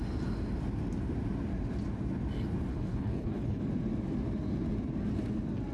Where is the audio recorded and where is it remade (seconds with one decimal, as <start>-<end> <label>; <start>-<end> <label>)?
0.0-2.7 recorded; 2.7-3.6 remade; 3.6-5.7 recorded